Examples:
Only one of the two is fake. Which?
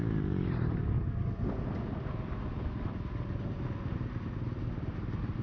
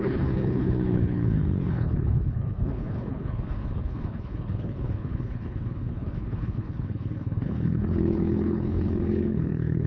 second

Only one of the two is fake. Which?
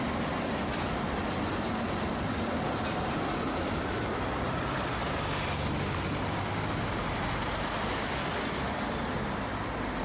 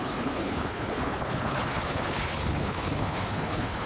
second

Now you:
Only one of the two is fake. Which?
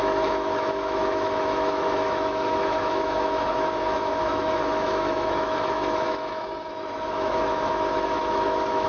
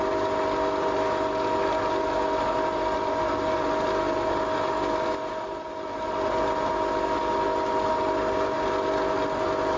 first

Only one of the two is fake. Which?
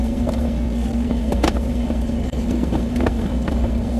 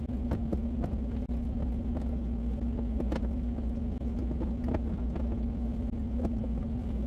first